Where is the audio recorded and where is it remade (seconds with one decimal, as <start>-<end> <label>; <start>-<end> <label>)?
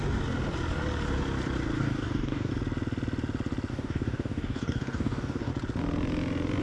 0.0-1.8 recorded; 1.8-2.5 remade; 2.5-3.7 recorded; 3.7-5.5 remade; 5.5-6.6 recorded